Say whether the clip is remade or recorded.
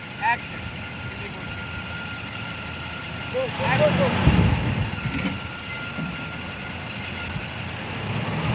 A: recorded